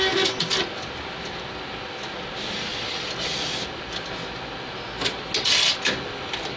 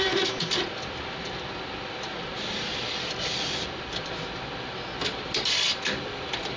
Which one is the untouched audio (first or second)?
first